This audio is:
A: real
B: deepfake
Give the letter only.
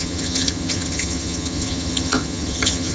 B